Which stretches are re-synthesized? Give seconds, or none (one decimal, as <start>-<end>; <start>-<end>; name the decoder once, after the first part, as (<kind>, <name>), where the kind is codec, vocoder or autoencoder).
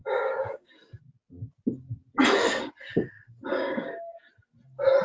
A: 0.0-0.7 (codec, DAC); 3.5-4.2